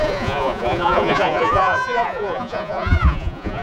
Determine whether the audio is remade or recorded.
remade